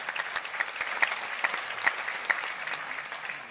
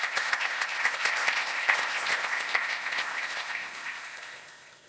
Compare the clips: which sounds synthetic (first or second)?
second